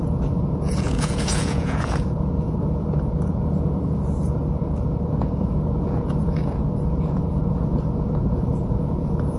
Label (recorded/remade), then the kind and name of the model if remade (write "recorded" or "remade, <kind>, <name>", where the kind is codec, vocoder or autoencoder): remade, vocoder, Vocos